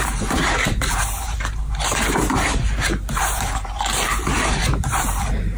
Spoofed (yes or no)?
yes